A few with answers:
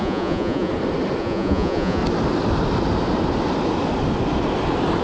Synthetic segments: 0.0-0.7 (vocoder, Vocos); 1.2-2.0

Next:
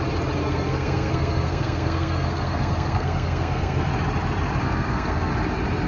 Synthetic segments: 0.4-3.9 (codec, SNAC); 4.6-5.3